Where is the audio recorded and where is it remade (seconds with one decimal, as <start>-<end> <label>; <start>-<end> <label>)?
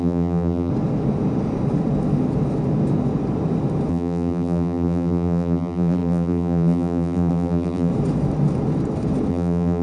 0.0-0.7 remade; 0.7-3.9 recorded; 3.9-7.9 remade; 7.9-9.3 recorded; 9.3-9.8 remade